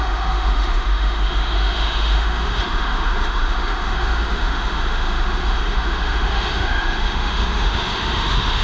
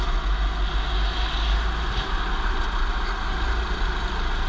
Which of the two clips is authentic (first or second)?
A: second